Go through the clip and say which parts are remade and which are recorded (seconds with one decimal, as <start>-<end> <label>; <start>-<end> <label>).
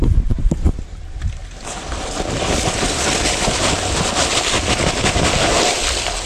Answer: 0.0-6.3 recorded